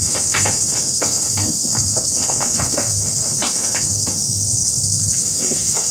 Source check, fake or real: fake